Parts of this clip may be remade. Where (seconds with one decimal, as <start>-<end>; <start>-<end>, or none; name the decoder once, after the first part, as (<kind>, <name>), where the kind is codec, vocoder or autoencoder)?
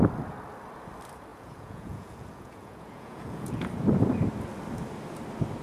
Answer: 1.3-3.7 (vocoder, Vocos)